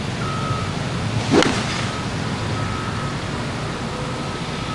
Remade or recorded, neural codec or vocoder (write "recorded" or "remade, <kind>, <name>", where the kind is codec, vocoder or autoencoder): recorded